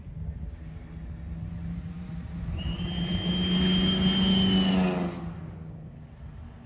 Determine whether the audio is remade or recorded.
recorded